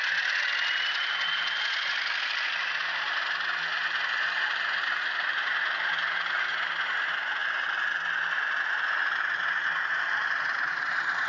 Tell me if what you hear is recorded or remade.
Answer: recorded